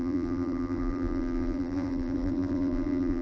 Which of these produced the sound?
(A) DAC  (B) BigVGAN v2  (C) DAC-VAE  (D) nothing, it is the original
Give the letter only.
B